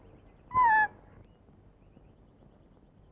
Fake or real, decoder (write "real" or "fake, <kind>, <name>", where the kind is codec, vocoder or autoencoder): real